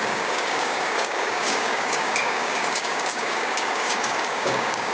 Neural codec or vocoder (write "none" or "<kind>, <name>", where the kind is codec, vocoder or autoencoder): codec, DAC